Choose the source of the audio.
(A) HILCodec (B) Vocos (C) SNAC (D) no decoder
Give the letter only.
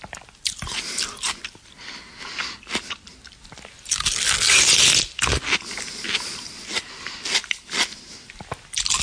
D